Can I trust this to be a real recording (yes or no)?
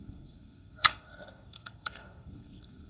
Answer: no